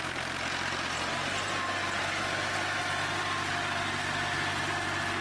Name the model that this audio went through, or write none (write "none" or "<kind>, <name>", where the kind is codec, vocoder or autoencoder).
none